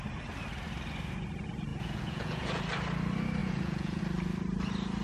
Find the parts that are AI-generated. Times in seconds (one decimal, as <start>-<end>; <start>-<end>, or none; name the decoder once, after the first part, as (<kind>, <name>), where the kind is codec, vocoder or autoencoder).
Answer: 1.7-2.6 (vocoder, Vocos); 3.4-4.0